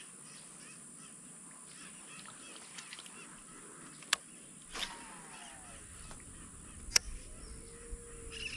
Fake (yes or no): no